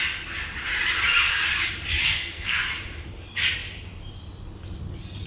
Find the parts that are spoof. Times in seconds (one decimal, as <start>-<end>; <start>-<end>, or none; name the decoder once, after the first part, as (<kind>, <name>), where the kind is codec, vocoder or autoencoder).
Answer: 2.0-2.6 (codec, SNAC)